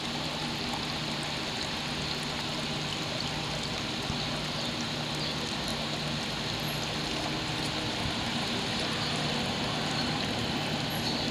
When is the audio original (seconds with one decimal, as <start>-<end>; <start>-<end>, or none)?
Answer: 0.0-11.3